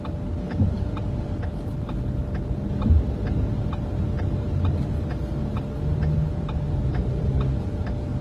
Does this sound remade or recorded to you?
recorded